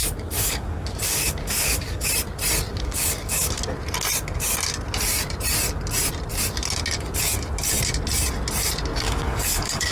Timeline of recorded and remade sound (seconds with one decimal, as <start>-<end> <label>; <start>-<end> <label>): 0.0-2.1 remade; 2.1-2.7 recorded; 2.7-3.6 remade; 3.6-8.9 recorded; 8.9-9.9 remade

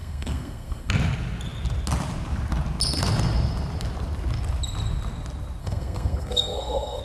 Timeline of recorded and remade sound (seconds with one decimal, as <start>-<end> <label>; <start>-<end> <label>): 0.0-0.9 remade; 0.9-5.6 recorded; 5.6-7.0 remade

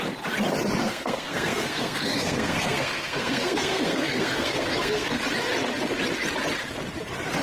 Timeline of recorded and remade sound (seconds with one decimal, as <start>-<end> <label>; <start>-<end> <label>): 0.0-0.8 recorded; 0.8-5.2 remade; 5.2-7.4 recorded